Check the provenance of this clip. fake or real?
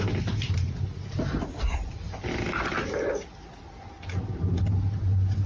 real